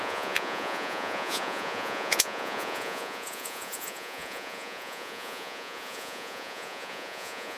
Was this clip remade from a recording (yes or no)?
yes